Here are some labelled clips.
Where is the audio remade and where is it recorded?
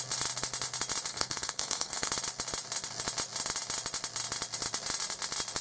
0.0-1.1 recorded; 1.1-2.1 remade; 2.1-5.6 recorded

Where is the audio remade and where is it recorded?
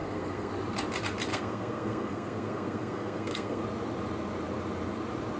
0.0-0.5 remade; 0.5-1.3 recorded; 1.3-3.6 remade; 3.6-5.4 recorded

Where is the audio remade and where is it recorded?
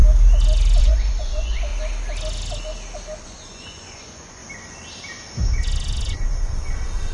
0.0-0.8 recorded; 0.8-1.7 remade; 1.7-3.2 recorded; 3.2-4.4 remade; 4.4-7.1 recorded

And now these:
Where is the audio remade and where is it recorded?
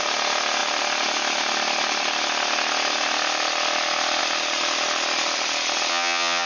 0.0-5.9 recorded; 5.9-6.5 remade